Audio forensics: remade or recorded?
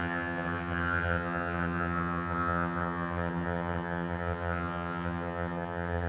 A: remade